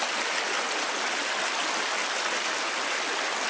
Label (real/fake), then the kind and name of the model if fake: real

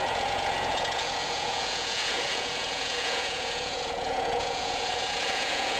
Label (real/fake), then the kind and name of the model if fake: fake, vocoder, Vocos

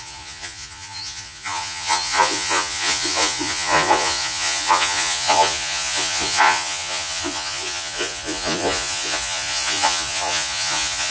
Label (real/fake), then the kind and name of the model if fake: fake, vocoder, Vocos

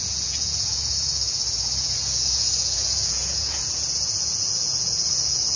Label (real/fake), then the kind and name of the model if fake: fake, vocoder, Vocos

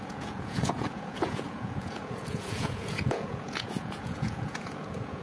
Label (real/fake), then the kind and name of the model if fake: fake, vocoder, Vocos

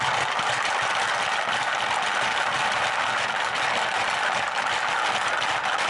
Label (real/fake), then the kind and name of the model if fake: real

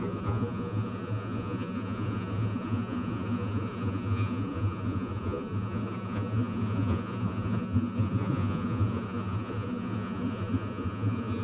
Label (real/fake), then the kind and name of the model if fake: fake, vocoder, Vocos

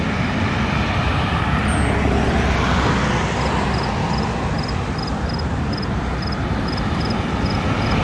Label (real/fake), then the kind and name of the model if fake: real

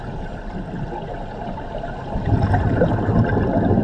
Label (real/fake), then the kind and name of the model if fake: real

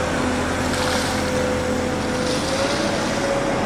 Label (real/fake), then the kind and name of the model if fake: real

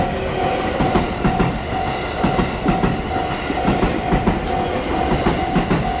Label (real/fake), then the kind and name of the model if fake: real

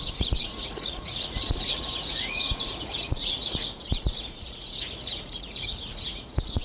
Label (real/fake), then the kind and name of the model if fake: fake, vocoder, Vocos